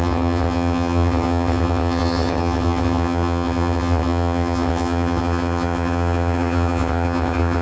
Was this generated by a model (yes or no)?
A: yes